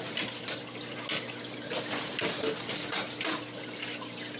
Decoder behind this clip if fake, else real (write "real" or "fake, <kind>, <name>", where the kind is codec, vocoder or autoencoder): real